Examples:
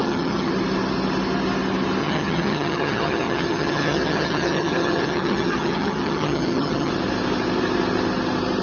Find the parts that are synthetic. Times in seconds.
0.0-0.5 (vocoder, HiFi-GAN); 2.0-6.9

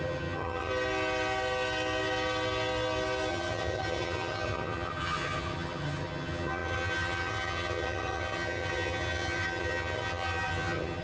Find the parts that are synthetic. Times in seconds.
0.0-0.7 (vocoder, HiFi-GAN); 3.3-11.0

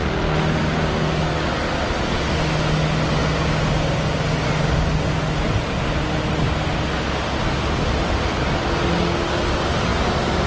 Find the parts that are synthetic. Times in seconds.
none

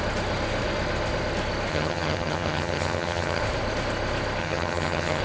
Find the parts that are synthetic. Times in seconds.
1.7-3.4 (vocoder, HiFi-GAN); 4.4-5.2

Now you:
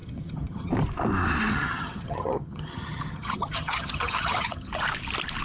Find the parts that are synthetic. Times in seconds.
0.0-0.7 (vocoder, HiFi-GAN); 1.5-4.7